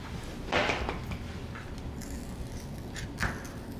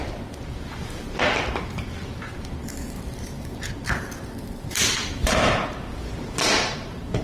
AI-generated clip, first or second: second